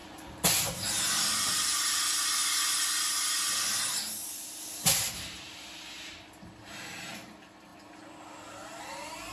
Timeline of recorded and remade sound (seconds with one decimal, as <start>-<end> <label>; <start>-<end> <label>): 0.0-0.6 remade; 0.6-9.3 recorded